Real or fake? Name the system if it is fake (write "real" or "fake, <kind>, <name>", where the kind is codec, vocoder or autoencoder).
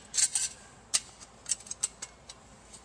real